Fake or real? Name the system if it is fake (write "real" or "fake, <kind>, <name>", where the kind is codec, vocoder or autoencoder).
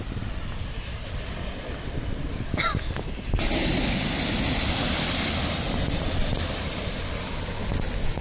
real